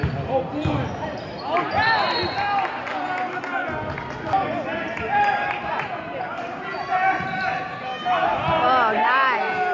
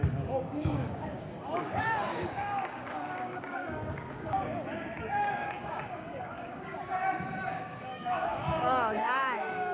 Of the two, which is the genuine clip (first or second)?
first